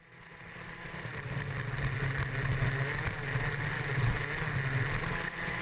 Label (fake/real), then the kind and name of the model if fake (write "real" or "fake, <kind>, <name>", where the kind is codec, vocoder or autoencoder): real